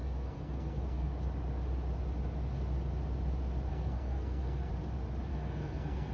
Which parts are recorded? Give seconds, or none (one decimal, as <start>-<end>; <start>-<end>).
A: 1.1-3.7; 4.7-5.3